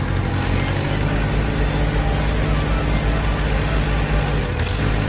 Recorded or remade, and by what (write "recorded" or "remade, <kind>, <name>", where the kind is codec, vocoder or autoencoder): recorded